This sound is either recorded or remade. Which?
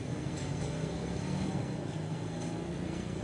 remade